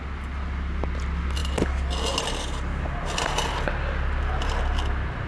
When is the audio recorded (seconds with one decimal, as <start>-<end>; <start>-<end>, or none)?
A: 0.0-5.3